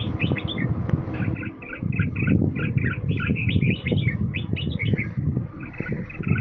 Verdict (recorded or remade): recorded